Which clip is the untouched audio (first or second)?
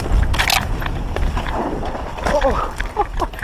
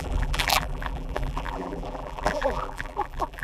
first